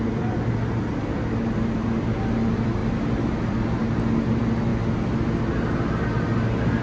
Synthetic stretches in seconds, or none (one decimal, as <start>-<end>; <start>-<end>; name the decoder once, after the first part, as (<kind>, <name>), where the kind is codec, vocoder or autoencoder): none

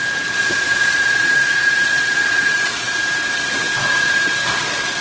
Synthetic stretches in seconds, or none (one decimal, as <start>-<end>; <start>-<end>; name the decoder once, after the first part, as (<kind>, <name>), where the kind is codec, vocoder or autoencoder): 0.4-2.9 (vocoder, Vocos); 3.8-4.3

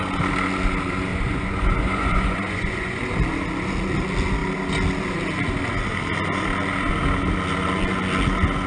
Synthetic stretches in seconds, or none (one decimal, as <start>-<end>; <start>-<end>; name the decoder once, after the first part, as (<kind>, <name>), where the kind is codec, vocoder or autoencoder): 1.1-3.0 (vocoder, Vocos)

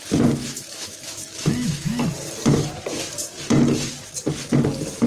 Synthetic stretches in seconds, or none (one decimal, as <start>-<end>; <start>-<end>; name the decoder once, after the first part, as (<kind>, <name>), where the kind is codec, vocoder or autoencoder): 0.4-2.0 (autoencoder, DAC-VAE)

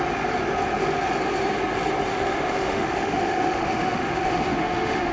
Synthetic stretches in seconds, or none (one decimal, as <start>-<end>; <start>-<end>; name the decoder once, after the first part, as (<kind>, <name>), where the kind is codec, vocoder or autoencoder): 2.1-5.1 (autoencoder, DAC-VAE)

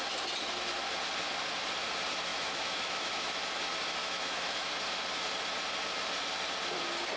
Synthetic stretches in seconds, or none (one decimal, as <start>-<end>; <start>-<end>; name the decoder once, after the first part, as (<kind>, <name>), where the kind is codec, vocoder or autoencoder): 2.3-3.3 (autoencoder, DAC-VAE); 4.0-4.7

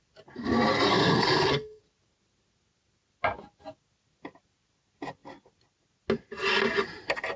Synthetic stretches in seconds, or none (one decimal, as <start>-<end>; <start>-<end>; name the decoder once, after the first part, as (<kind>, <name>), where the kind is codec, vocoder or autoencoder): 0.9-1.8 (codec, SNAC)

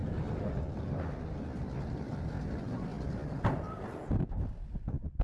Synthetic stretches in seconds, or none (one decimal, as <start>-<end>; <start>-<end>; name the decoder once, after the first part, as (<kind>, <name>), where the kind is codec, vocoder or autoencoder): none